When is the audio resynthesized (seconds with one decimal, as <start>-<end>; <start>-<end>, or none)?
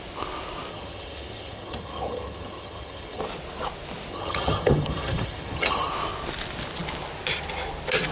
0.7-3.2; 4.1-5.9